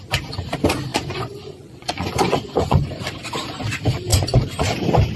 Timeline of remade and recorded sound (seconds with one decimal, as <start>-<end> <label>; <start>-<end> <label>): 0.0-0.9 recorded; 0.9-3.0 remade; 3.0-4.1 recorded; 4.1-4.6 remade; 4.6-5.2 recorded